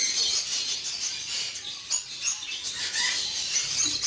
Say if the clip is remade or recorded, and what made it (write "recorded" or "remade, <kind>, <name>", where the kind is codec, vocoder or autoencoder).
recorded